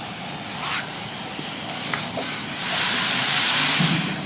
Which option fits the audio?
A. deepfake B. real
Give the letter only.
B